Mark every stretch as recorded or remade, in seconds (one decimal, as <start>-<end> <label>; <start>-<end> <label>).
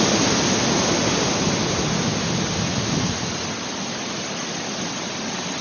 0.0-5.6 recorded